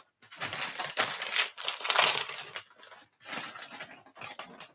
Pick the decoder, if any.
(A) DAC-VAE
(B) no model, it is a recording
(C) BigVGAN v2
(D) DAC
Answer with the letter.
B